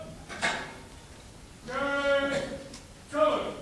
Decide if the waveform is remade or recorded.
recorded